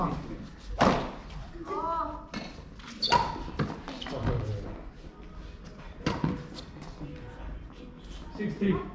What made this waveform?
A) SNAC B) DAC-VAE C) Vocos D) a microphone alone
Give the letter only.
D